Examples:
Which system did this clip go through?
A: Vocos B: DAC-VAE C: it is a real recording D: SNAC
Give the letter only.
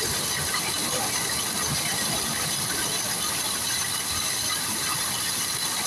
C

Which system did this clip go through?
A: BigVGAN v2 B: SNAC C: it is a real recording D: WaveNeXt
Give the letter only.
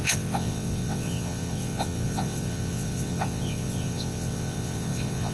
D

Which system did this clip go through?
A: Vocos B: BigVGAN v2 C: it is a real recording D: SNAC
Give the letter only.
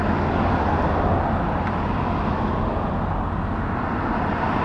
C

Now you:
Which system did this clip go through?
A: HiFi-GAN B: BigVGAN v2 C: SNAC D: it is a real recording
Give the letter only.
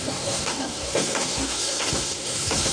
C